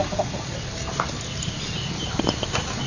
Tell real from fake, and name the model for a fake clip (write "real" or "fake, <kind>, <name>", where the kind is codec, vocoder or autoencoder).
real